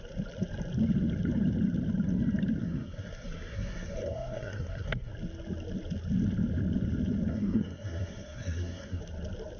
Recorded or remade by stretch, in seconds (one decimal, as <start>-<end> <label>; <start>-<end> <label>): 0.0-2.6 recorded; 2.6-5.1 remade; 5.1-7.3 recorded; 7.3-9.0 remade; 9.0-9.6 recorded

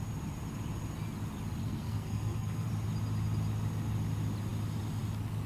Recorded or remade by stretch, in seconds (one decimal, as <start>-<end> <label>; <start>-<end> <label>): 0.0-1.6 recorded; 1.6-2.7 remade; 2.7-5.5 recorded

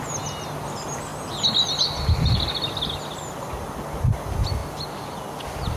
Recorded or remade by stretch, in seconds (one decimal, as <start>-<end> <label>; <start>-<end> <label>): 0.0-5.8 recorded

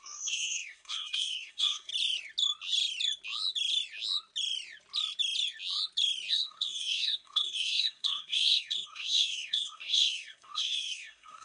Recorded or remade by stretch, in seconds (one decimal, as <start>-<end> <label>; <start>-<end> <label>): 0.0-1.9 remade; 1.9-6.3 recorded; 6.3-11.4 remade